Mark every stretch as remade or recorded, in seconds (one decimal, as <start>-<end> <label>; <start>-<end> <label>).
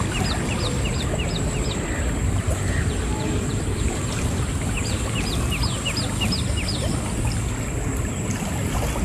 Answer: 0.0-2.2 recorded; 2.2-4.4 remade; 4.4-9.0 recorded